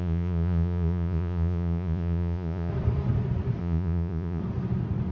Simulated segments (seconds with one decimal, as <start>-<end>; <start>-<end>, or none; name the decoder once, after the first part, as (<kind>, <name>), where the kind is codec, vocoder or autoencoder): 0.0-2.7 (vocoder, Vocos); 3.6-4.4